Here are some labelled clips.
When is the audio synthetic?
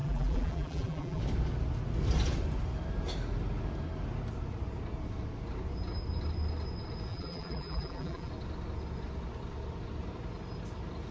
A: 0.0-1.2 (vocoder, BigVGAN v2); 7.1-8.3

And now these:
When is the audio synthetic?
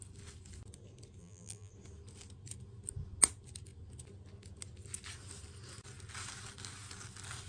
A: 1.2-1.7 (vocoder, BigVGAN v2)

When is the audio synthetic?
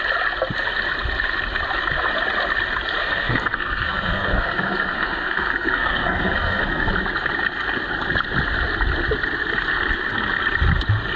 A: 3.0-6.9 (codec, SNAC)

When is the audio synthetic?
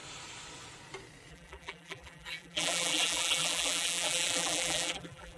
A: 1.3-5.4 (vocoder, BigVGAN v2)